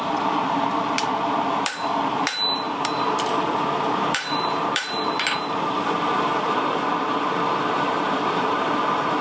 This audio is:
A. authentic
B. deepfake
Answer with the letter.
B